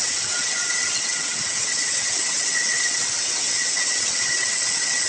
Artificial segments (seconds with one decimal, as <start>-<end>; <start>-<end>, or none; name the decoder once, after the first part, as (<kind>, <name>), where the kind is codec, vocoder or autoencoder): 0.0-5.1 (vocoder, WaveNeXt)